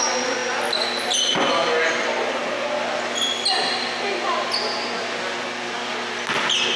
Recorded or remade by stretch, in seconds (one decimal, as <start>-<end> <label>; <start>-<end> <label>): 0.0-6.8 recorded